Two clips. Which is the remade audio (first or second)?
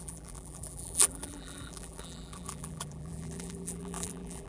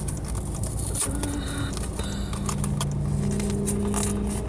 first